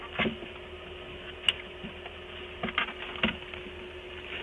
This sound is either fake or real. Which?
real